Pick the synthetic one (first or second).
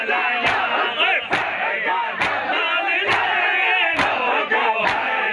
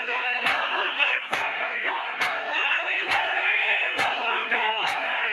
second